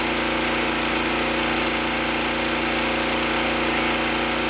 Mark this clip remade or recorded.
recorded